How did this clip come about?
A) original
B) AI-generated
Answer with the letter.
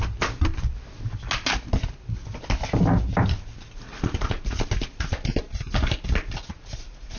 A